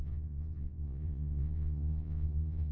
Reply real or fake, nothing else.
fake